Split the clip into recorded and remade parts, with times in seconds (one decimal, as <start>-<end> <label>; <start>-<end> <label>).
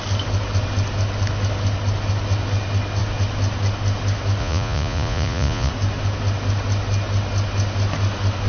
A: 0.0-4.4 recorded; 4.4-5.7 remade; 5.7-8.5 recorded